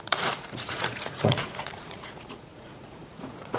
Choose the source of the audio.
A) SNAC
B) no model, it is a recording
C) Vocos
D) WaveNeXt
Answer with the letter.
C